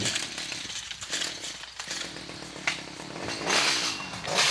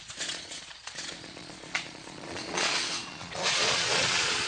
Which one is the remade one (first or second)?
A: second